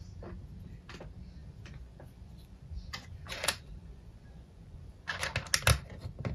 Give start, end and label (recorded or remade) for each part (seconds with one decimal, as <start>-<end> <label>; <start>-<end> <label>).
0.0-1.4 recorded; 1.4-5.2 remade; 5.2-6.3 recorded

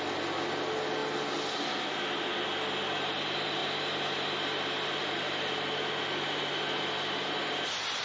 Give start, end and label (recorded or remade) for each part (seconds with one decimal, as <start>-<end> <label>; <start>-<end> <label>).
0.0-8.0 recorded

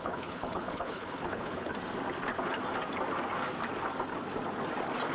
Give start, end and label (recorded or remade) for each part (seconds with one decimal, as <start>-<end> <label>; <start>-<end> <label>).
0.0-1.7 remade; 1.7-5.1 recorded

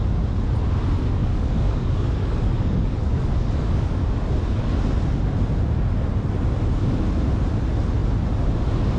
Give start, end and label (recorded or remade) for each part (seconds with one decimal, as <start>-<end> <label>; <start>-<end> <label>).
0.0-1.2 recorded; 1.2-4.6 remade; 4.6-9.0 recorded

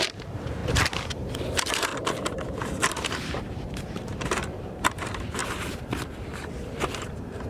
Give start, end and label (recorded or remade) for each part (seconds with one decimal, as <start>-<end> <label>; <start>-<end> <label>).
0.0-0.6 remade; 0.6-1.1 recorded; 1.1-1.9 remade; 1.9-3.5 recorded; 3.5-5.4 remade; 5.4-6.2 recorded; 6.2-7.5 remade

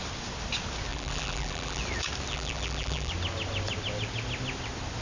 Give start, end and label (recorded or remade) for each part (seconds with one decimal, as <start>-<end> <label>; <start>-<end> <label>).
0.0-0.9 recorded; 0.9-1.8 remade; 1.8-2.3 recorded; 2.3-3.1 remade; 3.1-5.0 recorded